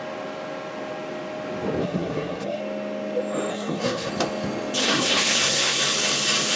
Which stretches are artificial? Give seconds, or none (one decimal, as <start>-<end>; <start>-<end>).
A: 1.8-2.6; 3.5-4.1; 4.8-5.8

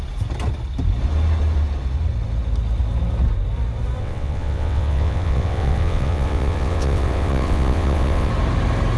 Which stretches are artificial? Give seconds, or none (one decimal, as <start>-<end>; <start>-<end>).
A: 4.0-8.3

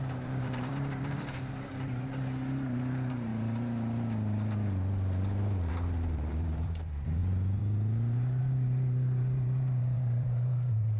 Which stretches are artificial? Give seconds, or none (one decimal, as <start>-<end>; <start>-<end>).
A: 0.0-3.3; 5.7-11.0

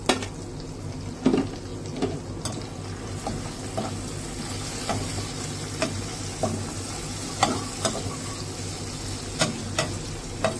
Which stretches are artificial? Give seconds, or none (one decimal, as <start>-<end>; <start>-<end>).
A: none